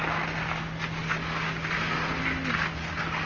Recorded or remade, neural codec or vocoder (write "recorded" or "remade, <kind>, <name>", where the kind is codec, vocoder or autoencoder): recorded